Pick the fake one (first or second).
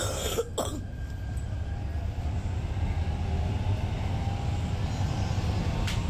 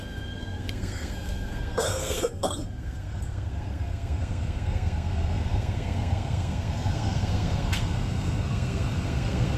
second